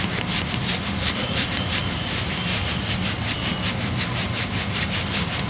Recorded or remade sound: recorded